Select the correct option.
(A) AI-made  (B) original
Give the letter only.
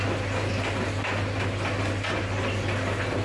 B